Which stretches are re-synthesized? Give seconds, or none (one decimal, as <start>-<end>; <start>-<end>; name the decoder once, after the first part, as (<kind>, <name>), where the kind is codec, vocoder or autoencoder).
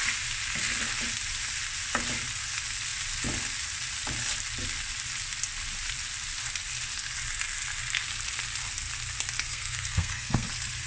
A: 9.5-10.5 (codec, SNAC)